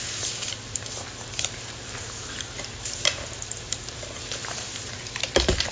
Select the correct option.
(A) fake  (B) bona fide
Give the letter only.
A